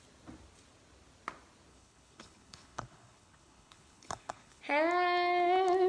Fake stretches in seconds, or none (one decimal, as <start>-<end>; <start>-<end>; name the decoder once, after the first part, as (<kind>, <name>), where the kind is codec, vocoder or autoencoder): 1.7-4.6 (codec, HILCodec)